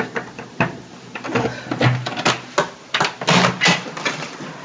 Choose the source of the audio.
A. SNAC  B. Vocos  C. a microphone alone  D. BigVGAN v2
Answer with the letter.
C